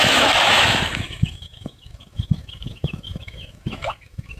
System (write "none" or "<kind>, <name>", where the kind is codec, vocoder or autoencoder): autoencoder, DAC-VAE